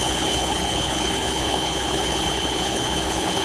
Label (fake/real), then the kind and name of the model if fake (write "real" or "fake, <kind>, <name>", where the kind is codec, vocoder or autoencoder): fake, codec, HILCodec